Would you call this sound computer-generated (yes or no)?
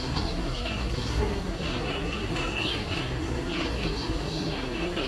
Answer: yes